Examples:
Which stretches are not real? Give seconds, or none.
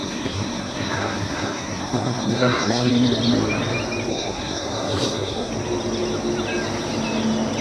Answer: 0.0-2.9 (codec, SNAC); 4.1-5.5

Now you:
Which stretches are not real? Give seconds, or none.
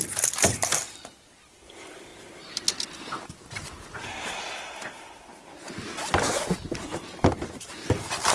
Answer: 0.0-2.1 (vocoder, BigVGAN v2); 6.5-8.3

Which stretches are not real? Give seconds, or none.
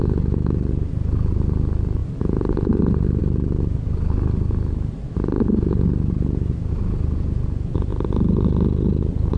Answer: none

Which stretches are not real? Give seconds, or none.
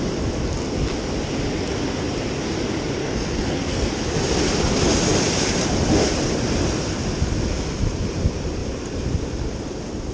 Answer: 3.0-3.9 (codec, SNAC)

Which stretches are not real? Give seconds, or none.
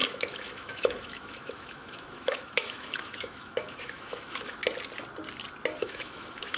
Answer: 0.0-4.6 (autoencoder, DAC-VAE); 5.8-6.6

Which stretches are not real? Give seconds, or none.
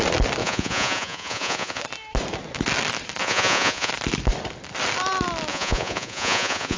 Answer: 0.4-1.8 (vocoder, Vocos); 3.2-3.9; 5.5-6.8